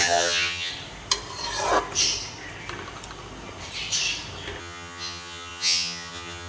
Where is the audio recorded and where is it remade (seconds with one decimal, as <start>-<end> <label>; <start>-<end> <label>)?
0.0-0.7 remade; 0.7-4.6 recorded; 4.6-6.5 remade